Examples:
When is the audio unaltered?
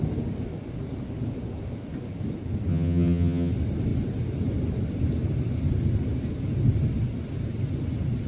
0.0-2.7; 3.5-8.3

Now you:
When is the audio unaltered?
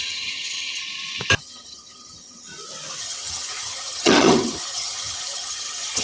0.8-1.4; 2.5-3.0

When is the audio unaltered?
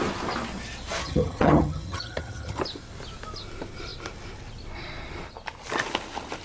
0.0-1.0; 2.6-6.4